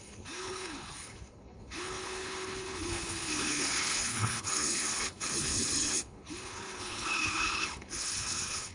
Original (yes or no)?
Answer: no